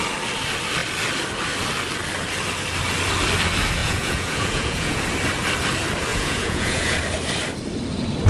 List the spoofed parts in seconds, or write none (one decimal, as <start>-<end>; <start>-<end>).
3.8-5.0; 6.1-7.0

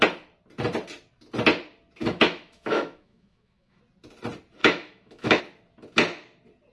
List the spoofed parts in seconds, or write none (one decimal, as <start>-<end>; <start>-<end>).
2.0-3.8; 4.6-5.4

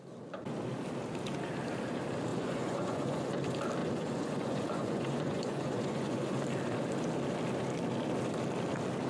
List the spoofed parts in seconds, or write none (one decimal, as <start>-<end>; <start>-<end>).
2.3-3.3; 3.8-6.4